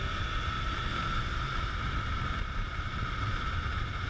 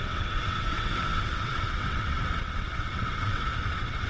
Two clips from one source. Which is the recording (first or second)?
first